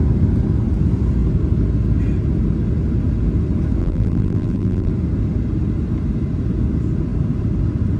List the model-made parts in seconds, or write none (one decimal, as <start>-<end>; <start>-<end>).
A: 3.8-4.9

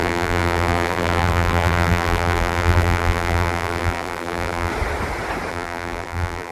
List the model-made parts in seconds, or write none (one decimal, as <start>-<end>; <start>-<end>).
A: 0.0-4.7; 5.5-6.5

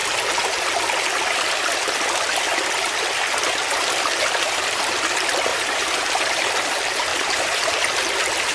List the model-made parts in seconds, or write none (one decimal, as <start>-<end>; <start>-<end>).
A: 5.5-6.2; 7.1-7.7

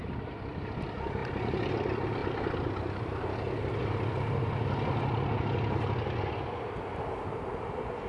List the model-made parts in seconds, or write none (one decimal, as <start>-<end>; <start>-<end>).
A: 0.0-0.7; 1.2-1.7

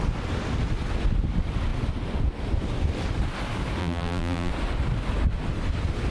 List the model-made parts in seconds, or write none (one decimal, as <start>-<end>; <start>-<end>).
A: 3.8-4.5